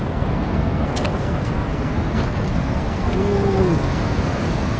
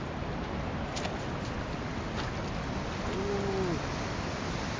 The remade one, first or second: first